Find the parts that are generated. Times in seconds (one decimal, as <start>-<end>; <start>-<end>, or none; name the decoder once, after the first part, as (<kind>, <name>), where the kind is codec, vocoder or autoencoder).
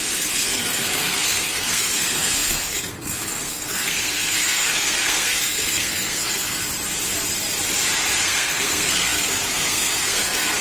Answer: 0.0-6.6 (codec, SNAC); 8.2-10.6